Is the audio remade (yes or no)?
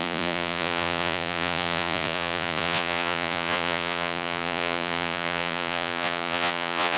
yes